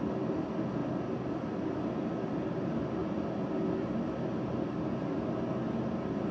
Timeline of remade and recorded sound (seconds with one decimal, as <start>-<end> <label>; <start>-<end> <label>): 0.0-6.3 recorded